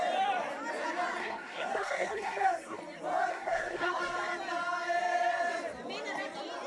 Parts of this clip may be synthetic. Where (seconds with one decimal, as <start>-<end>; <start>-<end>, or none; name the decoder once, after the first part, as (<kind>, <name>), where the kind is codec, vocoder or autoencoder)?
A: 1.2-2.8 (codec, SNAC); 3.3-4.0